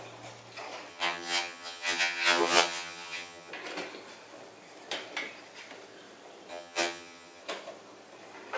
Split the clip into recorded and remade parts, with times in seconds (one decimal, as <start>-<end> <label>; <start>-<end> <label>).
0.0-0.9 recorded; 0.9-3.5 remade; 3.5-6.5 recorded; 6.5-7.4 remade; 7.4-8.6 recorded